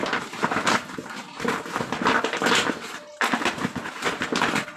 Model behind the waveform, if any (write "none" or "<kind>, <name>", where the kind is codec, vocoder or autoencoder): none